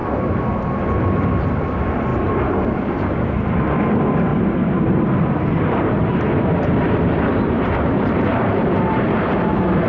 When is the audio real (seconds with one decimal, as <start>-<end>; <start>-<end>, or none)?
0.0-4.3